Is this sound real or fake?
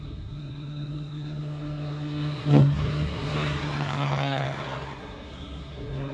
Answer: fake